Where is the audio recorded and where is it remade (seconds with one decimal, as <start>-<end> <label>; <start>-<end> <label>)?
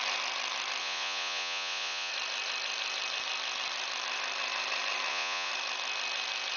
0.0-0.8 recorded; 0.8-2.1 remade; 2.1-5.1 recorded; 5.1-5.5 remade; 5.5-6.6 recorded